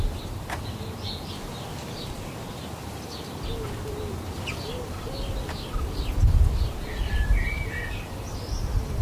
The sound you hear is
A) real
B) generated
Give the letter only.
A